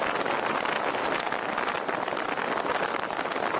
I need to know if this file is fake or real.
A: real